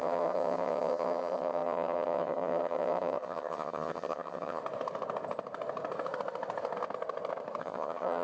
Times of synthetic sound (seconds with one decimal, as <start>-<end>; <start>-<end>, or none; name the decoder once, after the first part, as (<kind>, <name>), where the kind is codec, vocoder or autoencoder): 0.0-4.6 (vocoder, HiFi-GAN); 7.6-8.2